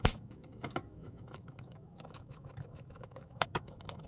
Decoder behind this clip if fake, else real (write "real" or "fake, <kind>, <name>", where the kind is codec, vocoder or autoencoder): fake, autoencoder, DAC-VAE